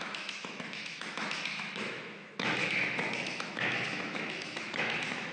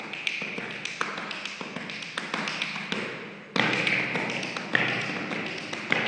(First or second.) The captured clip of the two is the second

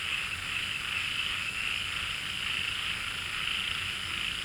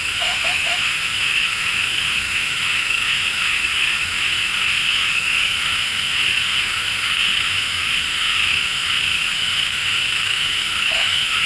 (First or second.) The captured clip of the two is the first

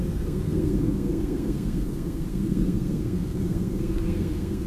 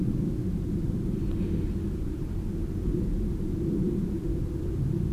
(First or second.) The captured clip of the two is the second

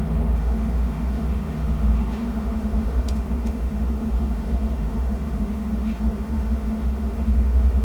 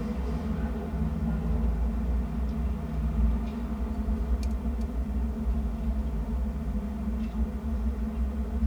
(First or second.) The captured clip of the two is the second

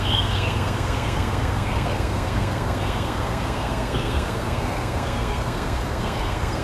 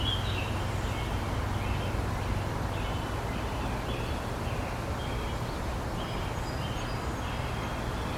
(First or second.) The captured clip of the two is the second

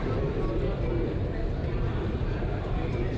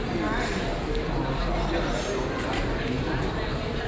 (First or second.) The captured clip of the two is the second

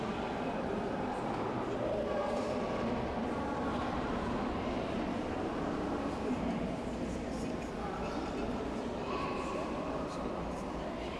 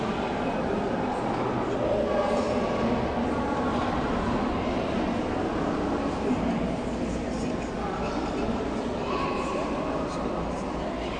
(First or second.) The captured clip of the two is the second